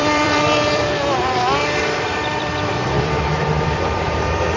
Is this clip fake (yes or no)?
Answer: yes